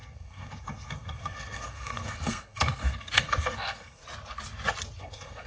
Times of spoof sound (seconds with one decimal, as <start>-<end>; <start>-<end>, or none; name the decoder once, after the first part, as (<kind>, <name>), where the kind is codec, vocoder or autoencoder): 0.0-4.0 (codec, SNAC); 5.0-5.5